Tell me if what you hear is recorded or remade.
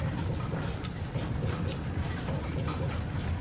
recorded